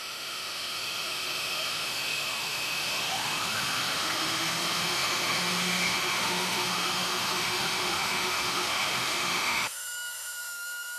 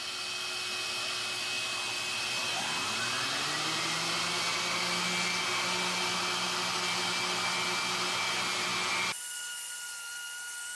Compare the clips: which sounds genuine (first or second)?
second